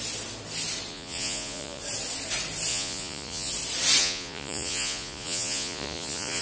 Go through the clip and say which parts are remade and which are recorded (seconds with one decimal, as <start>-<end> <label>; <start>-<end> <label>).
0.0-0.9 recorded; 0.9-1.8 remade; 1.8-2.7 recorded; 2.7-3.5 remade; 3.5-4.0 recorded; 4.0-6.4 remade